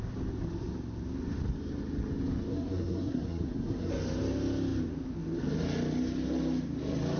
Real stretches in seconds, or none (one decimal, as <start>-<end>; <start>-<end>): 0.0-2.5; 3.9-7.2